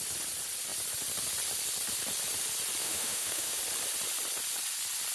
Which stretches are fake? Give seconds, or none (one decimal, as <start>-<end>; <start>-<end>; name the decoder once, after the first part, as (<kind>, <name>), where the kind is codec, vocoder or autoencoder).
2.8-3.6 (autoencoder, DAC-VAE)